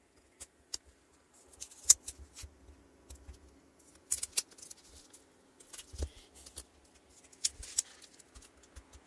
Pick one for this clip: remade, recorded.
recorded